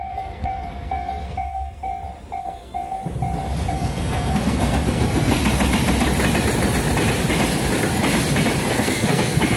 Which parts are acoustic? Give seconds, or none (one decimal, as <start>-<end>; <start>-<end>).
1.9-2.4; 3.0-3.7; 5.4-8.7